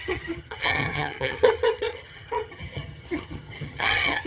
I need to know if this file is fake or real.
fake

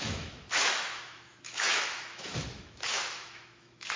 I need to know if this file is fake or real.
fake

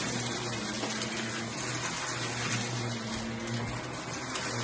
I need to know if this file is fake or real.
real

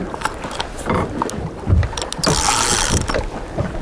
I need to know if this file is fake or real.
real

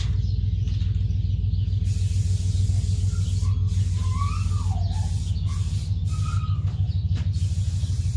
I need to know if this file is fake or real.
real